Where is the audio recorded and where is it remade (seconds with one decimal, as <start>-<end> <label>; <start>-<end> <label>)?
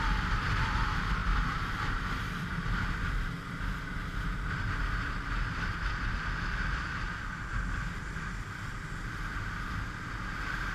0.0-10.7 recorded